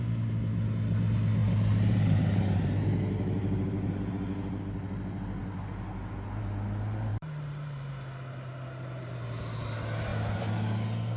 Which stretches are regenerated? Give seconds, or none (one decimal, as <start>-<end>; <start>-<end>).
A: 1.4-4.1; 7.1-7.9